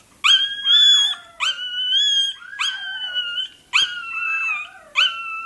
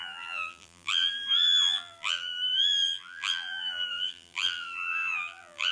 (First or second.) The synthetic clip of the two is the second